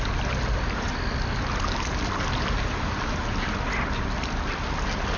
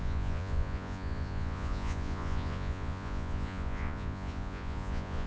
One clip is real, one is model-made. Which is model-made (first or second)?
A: second